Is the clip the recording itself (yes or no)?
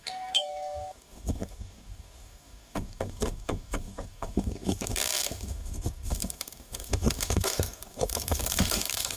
no